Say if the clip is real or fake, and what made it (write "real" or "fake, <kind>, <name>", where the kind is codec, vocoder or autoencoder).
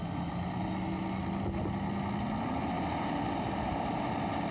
real